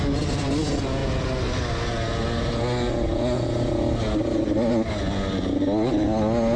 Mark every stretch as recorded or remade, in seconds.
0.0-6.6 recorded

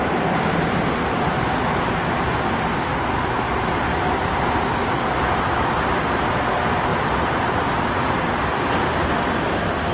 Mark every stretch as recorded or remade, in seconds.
0.0-6.9 recorded; 6.9-8.2 remade; 8.2-9.9 recorded

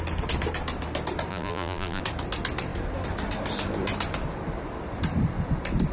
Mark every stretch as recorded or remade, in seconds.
0.0-1.3 recorded; 1.3-2.0 remade; 2.0-5.9 recorded